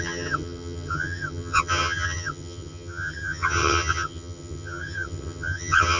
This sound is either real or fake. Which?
fake